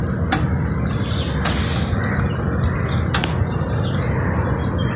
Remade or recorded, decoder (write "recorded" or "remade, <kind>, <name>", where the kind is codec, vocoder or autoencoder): recorded